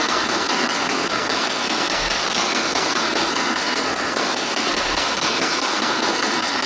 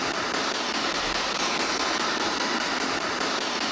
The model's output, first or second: first